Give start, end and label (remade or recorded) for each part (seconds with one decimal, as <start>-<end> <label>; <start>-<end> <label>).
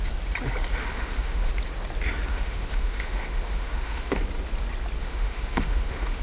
0.0-0.8 recorded; 0.8-1.5 remade; 1.5-2.3 recorded; 2.3-4.2 remade; 4.2-5.0 recorded; 5.0-6.2 remade